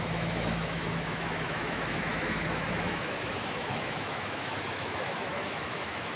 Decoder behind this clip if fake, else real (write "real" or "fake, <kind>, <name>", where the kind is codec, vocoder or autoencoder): fake, autoencoder, DAC-VAE